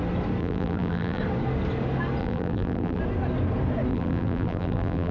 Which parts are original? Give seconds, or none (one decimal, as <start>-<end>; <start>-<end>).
0.0-0.4; 1.2-2.2; 3.0-3.9